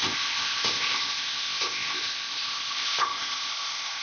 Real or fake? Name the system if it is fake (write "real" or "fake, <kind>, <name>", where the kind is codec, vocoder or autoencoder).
fake, codec, ZipCodec